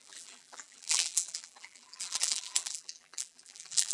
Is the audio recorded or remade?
remade